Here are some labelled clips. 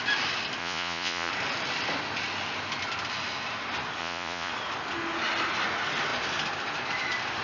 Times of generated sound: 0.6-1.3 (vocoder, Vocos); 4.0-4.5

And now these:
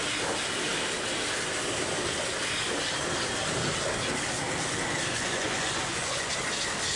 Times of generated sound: 5.1-6.3 (vocoder, Vocos)

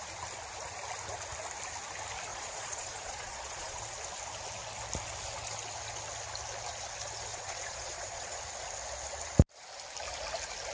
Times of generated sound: 2.3-3.8 (vocoder, Vocos); 7.3-8.4

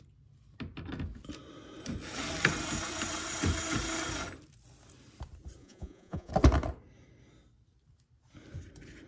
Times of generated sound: 5.6-6.3 (vocoder, Vocos)

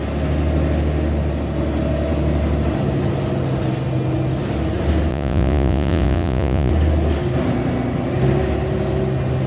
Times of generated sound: 5.1-6.7 (vocoder, Vocos)

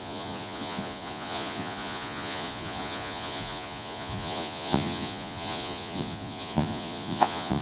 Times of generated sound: 0.0-7.6 (vocoder, Vocos)

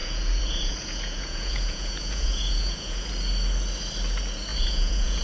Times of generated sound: 0.0-3.1 (vocoder, Vocos); 4.5-5.2

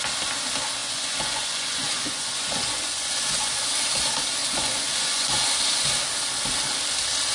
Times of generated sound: 0.8-3.7 (vocoder, Vocos); 4.4-5.9